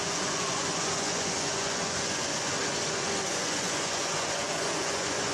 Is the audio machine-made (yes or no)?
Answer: yes